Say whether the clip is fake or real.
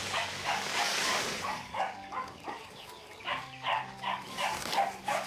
fake